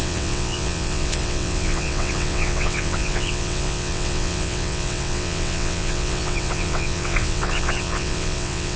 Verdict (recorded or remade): remade